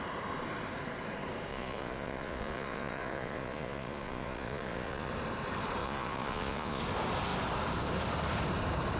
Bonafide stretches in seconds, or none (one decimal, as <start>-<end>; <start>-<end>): 0.0-1.5; 5.1-5.8; 6.8-9.0